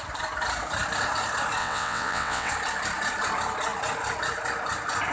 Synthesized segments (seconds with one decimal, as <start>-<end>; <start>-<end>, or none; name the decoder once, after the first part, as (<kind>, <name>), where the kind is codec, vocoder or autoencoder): 1.6-2.5 (vocoder, WaveNeXt)